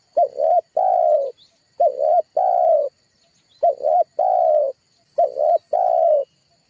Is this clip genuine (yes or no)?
yes